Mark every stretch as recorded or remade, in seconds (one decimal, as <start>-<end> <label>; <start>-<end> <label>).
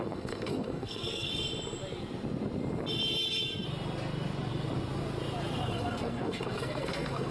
0.0-1.3 remade; 1.3-5.7 recorded; 5.7-7.3 remade